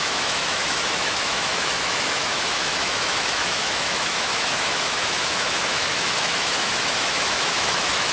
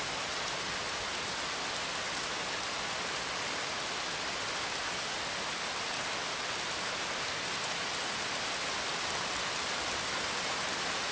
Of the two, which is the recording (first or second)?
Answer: second